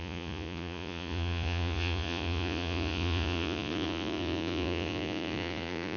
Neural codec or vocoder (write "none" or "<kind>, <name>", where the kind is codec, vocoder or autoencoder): vocoder, Vocos